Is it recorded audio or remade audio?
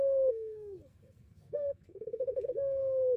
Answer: remade